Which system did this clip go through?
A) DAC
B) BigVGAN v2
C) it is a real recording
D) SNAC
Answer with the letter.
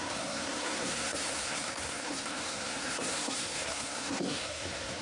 D